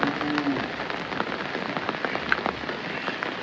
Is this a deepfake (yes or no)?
no